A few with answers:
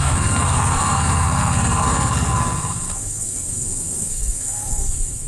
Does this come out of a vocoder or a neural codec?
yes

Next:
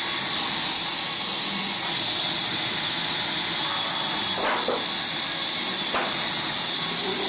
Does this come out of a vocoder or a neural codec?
no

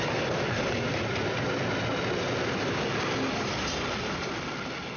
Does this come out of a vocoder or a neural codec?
no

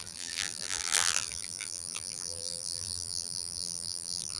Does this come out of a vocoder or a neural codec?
yes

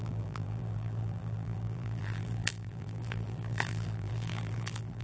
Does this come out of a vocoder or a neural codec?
yes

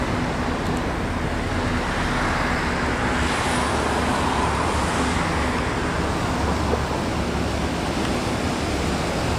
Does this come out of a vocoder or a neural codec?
no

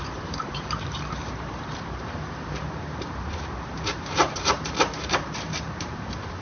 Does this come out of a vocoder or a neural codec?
yes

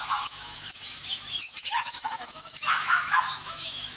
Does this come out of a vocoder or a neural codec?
yes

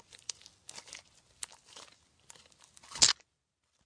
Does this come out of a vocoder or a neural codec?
no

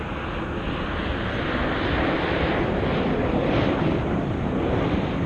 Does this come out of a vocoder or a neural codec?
no